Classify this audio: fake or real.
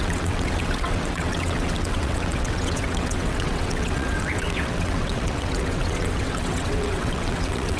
fake